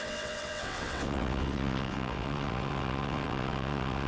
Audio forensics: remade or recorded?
remade